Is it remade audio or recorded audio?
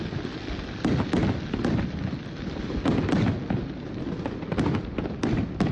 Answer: recorded